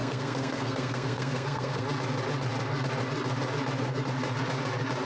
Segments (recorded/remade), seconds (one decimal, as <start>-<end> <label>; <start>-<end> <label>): 0.0-1.8 remade; 1.8-5.0 recorded